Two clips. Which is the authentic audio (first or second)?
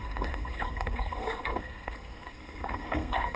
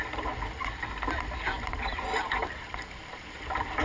second